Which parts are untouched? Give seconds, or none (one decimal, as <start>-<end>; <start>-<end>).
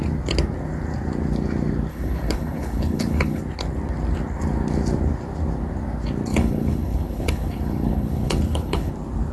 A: 0.0-1.9; 3.4-6.3; 8.9-9.3